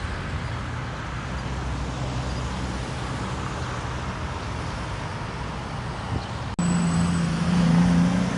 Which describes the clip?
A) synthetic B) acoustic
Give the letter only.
B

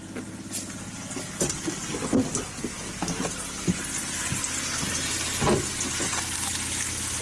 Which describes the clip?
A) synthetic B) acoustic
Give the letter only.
B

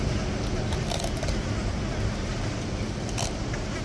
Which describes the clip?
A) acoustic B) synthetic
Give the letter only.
A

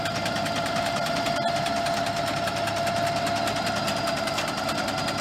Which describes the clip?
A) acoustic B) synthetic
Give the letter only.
A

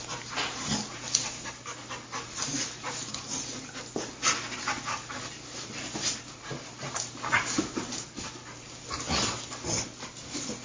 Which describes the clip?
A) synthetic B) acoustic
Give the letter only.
B